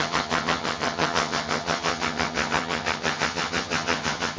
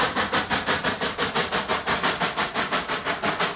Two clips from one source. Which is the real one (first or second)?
second